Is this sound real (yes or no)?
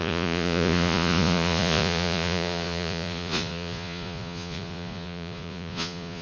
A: no